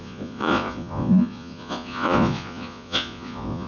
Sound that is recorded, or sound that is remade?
remade